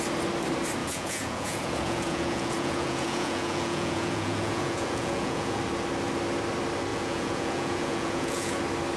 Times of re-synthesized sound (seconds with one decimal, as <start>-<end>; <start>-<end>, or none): 0.8-5.6; 6.9-8.6